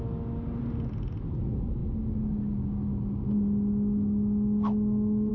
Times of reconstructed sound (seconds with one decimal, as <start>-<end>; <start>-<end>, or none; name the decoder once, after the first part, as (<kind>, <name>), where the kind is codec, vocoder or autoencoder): none